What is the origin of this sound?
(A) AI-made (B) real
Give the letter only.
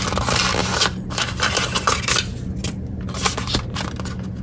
B